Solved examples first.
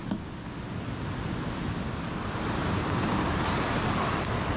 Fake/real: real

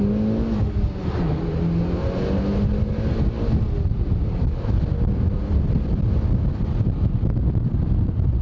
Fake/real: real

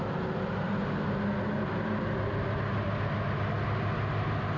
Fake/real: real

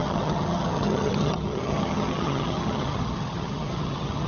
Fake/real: fake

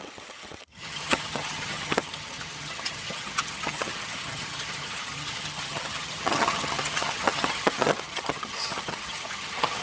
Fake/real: fake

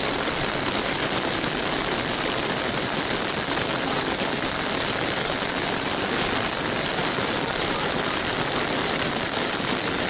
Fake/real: real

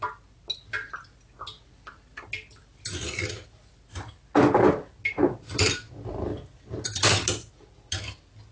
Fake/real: real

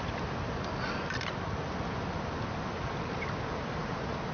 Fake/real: real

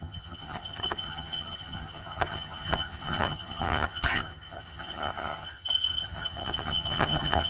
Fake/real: fake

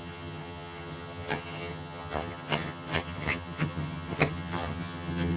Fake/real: fake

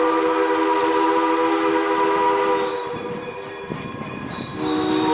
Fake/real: real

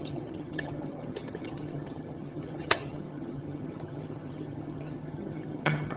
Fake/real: fake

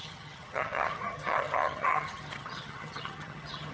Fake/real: fake